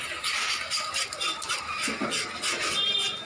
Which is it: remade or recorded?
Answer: recorded